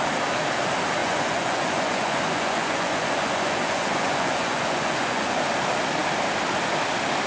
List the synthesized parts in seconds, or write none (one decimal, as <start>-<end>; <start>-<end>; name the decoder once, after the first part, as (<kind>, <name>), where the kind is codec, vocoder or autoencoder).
1.0-5.4 (vocoder, Vocos)